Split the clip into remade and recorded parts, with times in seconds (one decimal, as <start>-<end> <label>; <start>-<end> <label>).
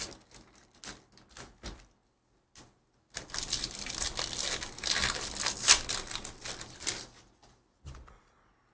0.0-7.4 recorded; 7.4-8.1 remade; 8.1-8.7 recorded